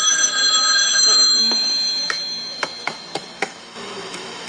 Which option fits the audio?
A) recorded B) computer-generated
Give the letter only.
B